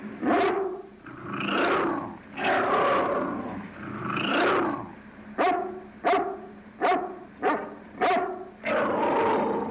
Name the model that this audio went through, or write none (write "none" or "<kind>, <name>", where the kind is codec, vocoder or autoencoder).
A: none